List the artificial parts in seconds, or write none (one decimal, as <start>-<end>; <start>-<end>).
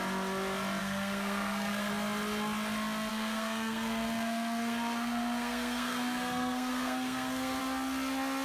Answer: 0.8-1.9; 3.1-7.6